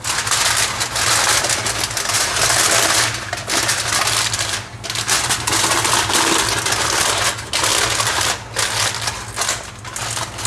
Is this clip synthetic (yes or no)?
no